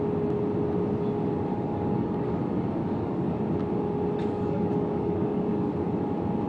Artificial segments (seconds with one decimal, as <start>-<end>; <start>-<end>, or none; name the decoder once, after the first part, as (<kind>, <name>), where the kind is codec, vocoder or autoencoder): 1.5-2.4 (codec, DAC); 2.8-3.4; 4.2-5.7